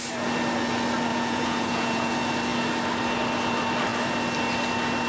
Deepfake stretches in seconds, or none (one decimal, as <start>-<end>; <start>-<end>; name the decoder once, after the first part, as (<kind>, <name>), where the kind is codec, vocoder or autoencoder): 1.1-2.1 (vocoder, Vocos)